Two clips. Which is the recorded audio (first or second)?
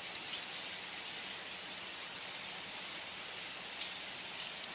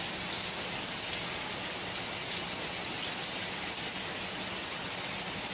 second